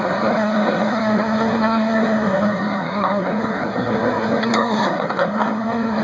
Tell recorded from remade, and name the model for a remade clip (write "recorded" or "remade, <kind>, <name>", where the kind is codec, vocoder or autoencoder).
remade, codec, SNAC